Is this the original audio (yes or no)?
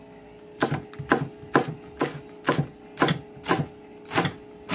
yes